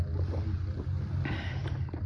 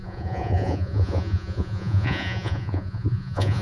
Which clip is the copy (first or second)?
second